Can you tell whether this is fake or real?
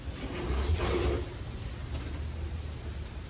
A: real